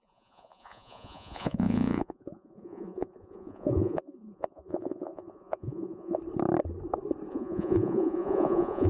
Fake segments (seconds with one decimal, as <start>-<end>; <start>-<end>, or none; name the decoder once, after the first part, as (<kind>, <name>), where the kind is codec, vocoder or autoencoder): 0.0-6.2 (vocoder, Vocos); 7.3-8.9